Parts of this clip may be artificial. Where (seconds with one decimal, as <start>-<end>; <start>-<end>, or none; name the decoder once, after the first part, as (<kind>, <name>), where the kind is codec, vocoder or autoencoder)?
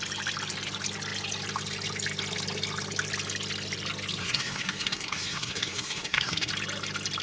4.2-6.5 (codec, SNAC)